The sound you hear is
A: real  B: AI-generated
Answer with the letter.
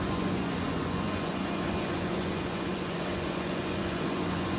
B